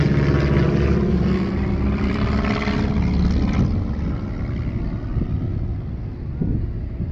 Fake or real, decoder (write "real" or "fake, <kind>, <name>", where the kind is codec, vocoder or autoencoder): real